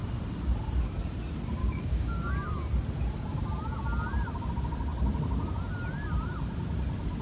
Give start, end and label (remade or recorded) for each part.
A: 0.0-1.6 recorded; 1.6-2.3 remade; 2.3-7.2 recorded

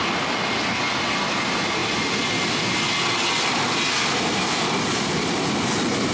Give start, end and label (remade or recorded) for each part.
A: 0.0-6.1 recorded

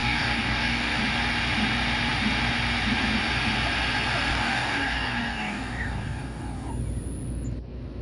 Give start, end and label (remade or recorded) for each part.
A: 0.0-1.0 remade; 1.0-4.3 recorded; 4.3-6.7 remade; 6.7-8.0 recorded

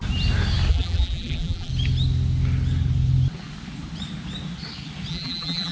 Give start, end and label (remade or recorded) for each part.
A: 0.0-0.7 recorded; 0.7-1.7 remade; 1.7-5.1 recorded; 5.1-5.7 remade

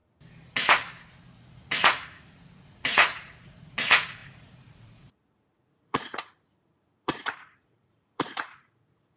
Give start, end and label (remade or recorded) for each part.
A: 0.0-1.5 recorded; 1.5-9.2 remade